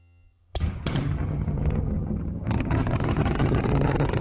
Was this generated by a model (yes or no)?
yes